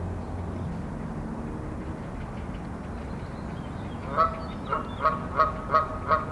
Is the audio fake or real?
real